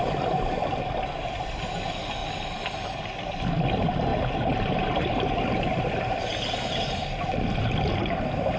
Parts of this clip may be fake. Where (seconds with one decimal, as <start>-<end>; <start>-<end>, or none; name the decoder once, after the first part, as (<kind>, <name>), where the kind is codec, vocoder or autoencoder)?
none